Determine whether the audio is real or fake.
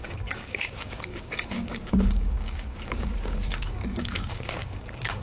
fake